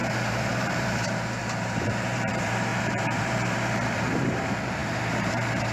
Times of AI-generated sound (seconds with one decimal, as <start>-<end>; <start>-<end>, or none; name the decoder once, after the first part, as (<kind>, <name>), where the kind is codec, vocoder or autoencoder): 0.0-5.7 (vocoder, BigVGAN v2)